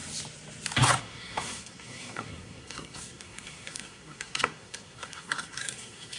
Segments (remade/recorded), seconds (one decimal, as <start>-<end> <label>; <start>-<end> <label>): 0.0-1.0 recorded; 1.0-6.2 remade